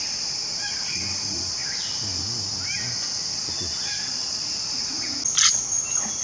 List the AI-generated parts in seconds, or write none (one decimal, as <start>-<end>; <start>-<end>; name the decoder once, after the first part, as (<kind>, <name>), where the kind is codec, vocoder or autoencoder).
0.0-1.6 (vocoder, Vocos); 4.6-5.1